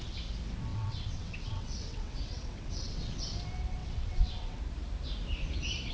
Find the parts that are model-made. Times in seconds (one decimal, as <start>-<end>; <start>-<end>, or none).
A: 0.7-3.2; 3.8-4.6